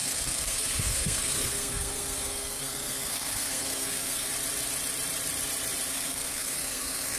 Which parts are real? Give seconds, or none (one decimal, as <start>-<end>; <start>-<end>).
4.3-5.9